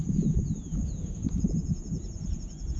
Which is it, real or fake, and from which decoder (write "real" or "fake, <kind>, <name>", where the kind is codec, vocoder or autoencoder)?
fake, vocoder, Vocos